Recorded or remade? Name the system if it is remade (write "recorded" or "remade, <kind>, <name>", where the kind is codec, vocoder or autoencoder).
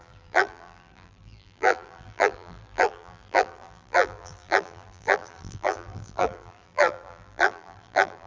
remade, vocoder, BigVGAN v2